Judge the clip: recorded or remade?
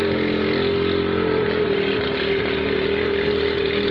recorded